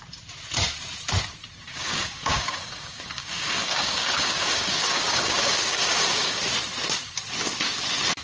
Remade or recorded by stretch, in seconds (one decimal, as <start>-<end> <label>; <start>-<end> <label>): 0.0-1.7 recorded; 1.7-6.4 remade; 6.4-8.2 recorded